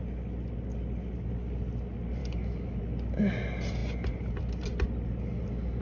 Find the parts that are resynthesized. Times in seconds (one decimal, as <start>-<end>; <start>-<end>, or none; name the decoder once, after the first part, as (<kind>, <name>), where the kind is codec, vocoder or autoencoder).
2.2-2.8 (autoencoder, DAC-VAE)